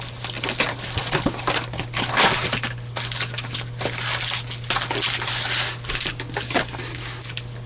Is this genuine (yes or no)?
yes